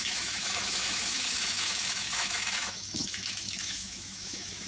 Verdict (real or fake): fake